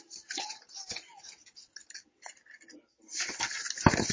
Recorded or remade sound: recorded